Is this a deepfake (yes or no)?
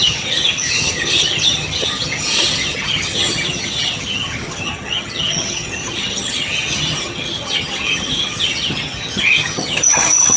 yes